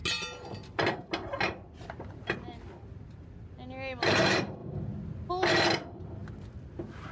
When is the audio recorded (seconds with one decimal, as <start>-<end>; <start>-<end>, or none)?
0.0-7.1